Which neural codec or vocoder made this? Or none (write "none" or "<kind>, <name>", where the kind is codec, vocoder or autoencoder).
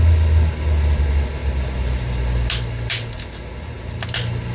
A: none